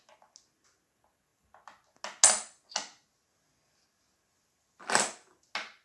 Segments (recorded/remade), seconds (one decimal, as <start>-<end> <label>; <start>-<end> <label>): 0.0-5.8 recorded